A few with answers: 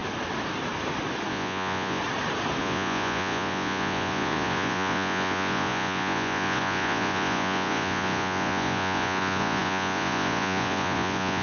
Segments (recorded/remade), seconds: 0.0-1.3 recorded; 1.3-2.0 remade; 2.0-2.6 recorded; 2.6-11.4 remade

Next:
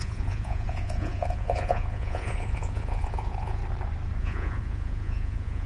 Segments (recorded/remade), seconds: 0.0-3.6 remade; 3.6-4.2 recorded; 4.2-5.7 remade

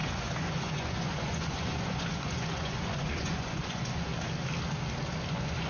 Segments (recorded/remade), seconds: 0.0-4.1 remade; 4.1-5.3 recorded; 5.3-5.7 remade

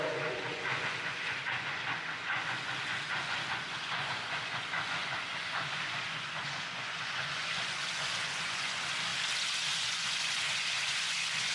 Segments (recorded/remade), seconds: 0.0-9.1 remade; 9.1-9.7 recorded; 9.7-11.5 remade